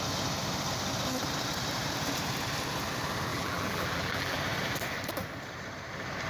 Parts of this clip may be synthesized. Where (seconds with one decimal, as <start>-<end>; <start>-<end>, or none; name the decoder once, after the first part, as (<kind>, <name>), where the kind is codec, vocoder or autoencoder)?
3.3-4.4 (vocoder, BigVGAN v2)